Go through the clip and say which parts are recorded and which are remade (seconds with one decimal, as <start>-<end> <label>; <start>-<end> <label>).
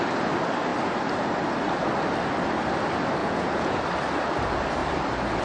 0.0-3.2 recorded; 3.2-3.8 remade; 3.8-5.4 recorded